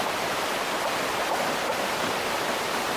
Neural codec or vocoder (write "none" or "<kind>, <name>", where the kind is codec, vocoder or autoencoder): none